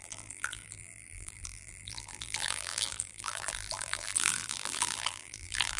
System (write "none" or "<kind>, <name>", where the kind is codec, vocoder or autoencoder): vocoder, BigVGAN v2